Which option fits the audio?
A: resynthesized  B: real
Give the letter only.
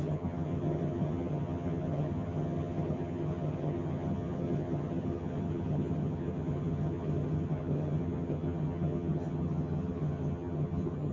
A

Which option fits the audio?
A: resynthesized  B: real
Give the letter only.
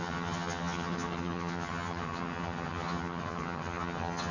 A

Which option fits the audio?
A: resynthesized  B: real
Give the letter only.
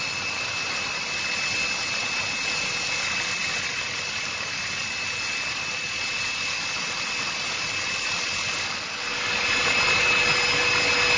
B